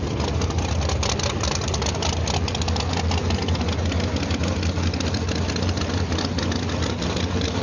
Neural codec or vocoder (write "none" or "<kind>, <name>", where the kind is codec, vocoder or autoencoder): none